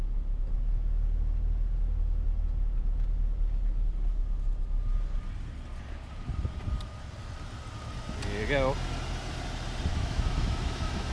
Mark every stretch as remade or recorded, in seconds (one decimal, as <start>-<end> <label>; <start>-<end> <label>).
0.0-9.9 recorded; 9.9-11.1 remade